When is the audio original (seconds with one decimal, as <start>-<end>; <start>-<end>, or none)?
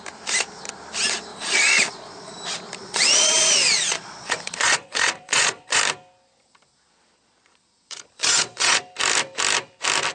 0.0-1.3; 2.3-2.8; 5.8-6.7; 8.8-10.1